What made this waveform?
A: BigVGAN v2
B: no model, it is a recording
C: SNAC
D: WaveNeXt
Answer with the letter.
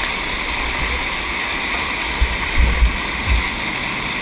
B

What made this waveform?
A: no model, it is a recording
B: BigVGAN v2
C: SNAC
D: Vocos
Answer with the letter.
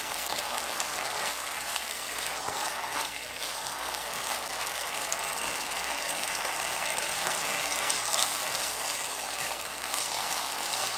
C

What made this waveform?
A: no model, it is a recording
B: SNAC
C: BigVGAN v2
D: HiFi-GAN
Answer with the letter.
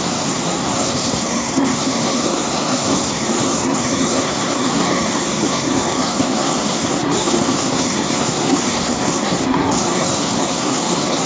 B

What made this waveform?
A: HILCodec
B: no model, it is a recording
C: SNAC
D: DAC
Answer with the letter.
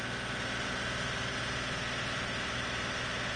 B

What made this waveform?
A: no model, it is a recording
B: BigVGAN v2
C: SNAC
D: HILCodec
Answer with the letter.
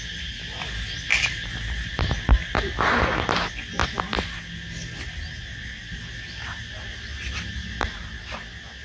A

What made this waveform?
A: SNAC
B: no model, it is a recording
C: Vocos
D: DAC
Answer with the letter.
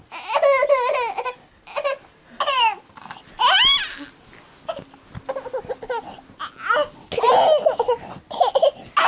B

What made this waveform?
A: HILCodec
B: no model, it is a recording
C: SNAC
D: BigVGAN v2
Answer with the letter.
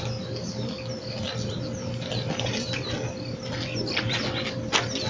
B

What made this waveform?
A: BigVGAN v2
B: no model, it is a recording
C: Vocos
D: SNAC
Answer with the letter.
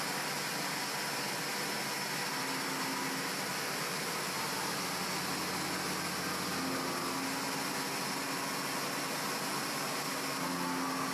B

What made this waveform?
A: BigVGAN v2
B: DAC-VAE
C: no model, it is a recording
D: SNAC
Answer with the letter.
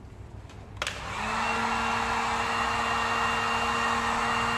C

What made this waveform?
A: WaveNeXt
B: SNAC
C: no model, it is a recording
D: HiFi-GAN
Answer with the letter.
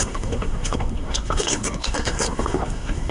B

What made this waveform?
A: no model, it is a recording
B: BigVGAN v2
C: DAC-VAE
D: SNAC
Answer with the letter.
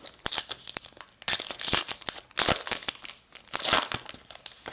A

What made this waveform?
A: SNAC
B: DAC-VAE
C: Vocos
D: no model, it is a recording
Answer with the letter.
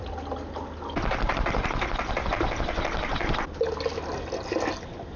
D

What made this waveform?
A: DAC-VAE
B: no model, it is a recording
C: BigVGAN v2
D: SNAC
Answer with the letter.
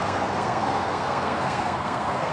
D